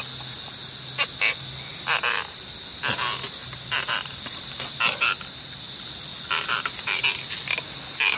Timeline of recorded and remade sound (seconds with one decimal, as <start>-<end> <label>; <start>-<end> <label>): 0.0-3.4 recorded; 3.4-4.8 remade; 4.8-6.1 recorded; 6.1-7.0 remade; 7.0-8.2 recorded